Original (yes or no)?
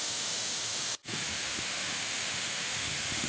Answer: no